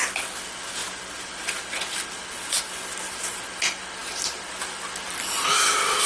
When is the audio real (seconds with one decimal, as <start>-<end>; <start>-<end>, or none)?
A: 0.0-6.1

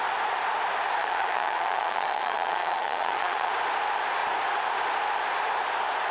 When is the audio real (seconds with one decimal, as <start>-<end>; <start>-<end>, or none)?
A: 0.0-1.0; 3.5-6.1

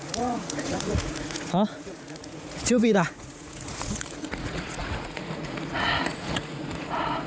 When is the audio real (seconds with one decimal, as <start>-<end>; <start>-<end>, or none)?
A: none

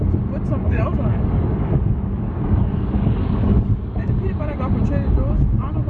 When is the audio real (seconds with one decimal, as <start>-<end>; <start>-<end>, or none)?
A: 0.0-0.6; 4.1-5.9

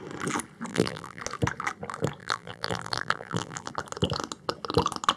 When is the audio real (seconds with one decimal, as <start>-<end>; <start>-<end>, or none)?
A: 0.0-0.7; 1.2-2.2; 3.7-5.2

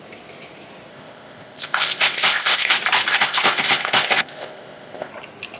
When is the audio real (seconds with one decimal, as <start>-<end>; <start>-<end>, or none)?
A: 0.0-0.9; 2.7-3.1; 5.1-5.6